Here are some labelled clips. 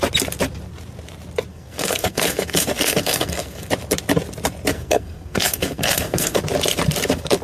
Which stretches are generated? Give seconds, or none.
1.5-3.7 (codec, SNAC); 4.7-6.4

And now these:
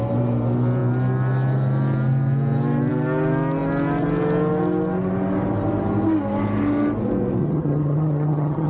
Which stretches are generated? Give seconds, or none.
7.4-8.7 (vocoder, HiFi-GAN)

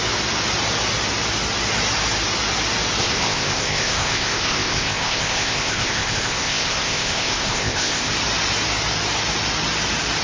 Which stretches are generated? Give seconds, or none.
3.0-8.1 (codec, ZipCodec)

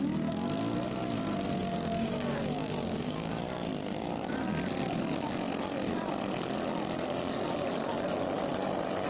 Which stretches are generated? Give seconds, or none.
1.6-3.3 (codec, DAC)

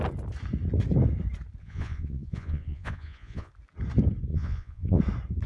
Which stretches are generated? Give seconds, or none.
1.6-3.5 (vocoder, Vocos); 4.3-5.0

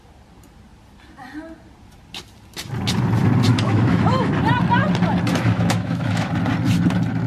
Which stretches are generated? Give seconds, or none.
3.5-4.3 (autoencoder, DAC-VAE); 5.3-6.3

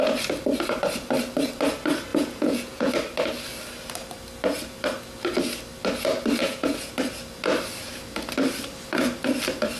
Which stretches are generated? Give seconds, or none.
2.1-2.9 (vocoder, Vocos); 6.4-6.9

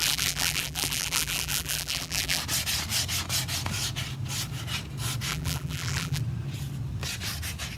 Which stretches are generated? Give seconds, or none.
0.0-2.4 (vocoder, BigVGAN v2); 5.3-6.2